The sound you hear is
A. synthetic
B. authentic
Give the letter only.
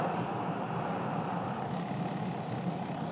A